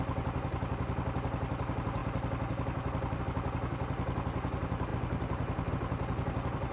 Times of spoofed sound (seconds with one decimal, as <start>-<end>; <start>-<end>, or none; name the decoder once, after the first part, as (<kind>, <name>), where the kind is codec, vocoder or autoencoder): none